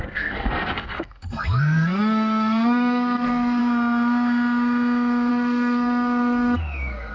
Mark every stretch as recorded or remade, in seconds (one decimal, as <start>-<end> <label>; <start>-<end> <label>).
0.0-3.6 remade; 3.6-5.3 recorded; 5.3-7.1 remade